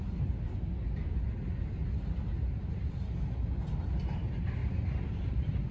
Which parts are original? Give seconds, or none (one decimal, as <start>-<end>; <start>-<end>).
0.0-4.6